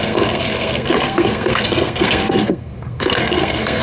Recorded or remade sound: remade